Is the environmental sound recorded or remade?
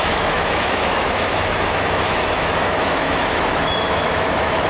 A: remade